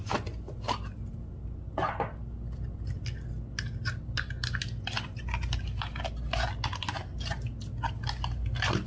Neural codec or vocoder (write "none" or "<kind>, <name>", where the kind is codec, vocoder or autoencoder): none